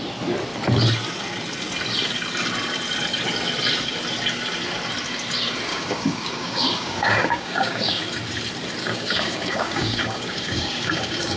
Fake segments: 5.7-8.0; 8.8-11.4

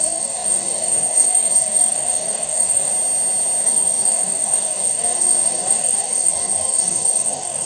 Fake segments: 0.0-2.9; 3.6-7.6

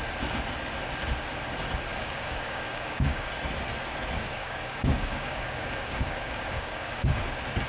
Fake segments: 1.9-3.3; 4.3-7.2